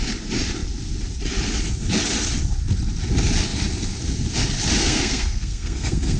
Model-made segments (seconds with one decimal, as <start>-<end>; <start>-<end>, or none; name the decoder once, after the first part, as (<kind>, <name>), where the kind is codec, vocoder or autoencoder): 4.8-6.2 (codec, SNAC)